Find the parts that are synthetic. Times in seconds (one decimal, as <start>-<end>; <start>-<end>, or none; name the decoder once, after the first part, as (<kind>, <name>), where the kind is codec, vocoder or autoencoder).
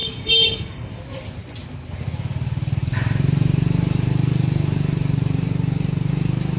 0.0-0.9 (codec, DAC)